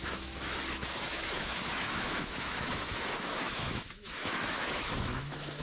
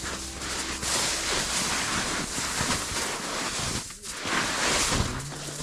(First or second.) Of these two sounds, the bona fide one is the second